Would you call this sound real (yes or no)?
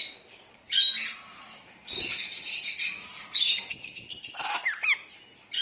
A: yes